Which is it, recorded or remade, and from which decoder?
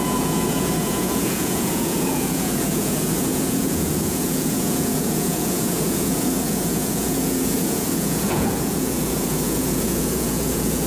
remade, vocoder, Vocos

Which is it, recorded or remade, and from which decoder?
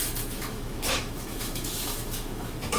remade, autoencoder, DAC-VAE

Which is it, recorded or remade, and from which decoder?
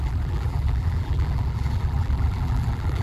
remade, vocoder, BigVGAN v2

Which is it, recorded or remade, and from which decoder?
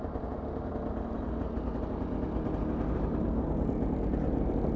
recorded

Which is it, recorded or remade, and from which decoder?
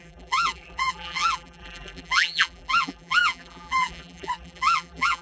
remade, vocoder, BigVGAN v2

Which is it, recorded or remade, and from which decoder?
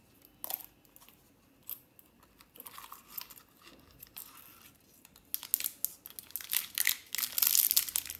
recorded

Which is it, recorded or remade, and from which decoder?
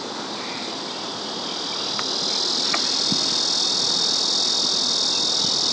recorded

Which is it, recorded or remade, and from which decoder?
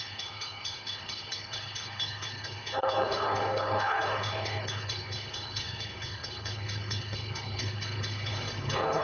remade, codec, HILCodec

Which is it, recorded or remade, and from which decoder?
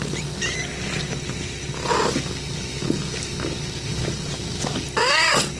recorded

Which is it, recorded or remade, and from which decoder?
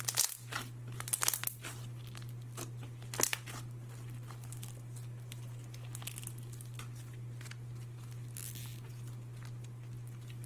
recorded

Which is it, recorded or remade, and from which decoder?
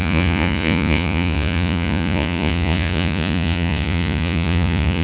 remade, vocoder, Vocos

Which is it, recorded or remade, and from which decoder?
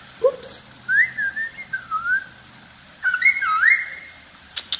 recorded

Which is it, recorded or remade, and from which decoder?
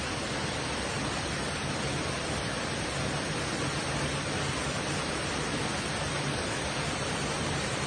recorded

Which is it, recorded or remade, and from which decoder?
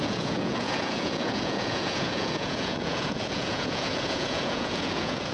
remade, vocoder, Vocos